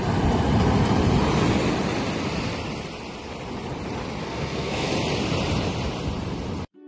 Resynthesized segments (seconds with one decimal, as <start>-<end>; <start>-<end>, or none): 4.2-4.9